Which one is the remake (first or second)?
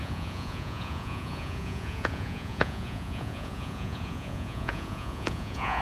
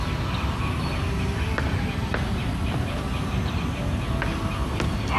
first